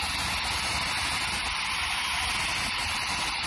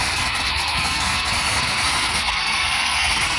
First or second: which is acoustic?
first